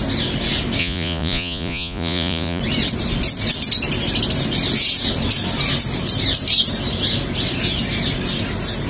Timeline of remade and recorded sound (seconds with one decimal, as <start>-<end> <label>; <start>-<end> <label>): 0.0-0.8 recorded; 0.8-2.6 remade; 2.6-8.9 recorded